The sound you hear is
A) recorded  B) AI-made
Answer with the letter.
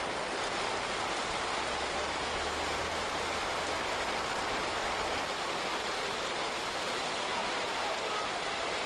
A